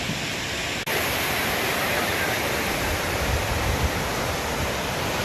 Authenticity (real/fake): real